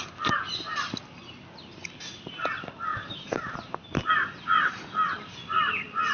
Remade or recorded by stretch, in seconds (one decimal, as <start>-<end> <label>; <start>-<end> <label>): 0.0-2.9 recorded; 2.9-4.1 remade; 4.1-6.1 recorded